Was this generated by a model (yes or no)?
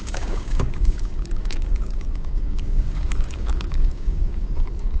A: yes